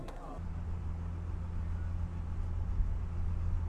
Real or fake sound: real